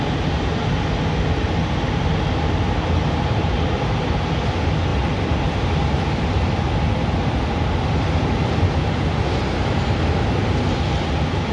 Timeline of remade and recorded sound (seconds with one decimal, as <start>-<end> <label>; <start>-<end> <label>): 0.0-11.5 recorded